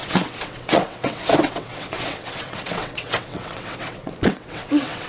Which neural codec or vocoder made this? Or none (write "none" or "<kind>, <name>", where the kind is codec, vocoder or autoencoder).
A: vocoder, WaveNeXt